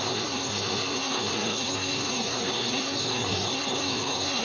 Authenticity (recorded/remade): remade